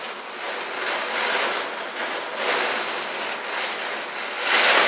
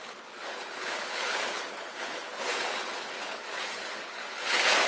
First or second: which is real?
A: first